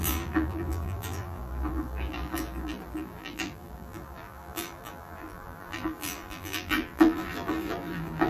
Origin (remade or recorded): remade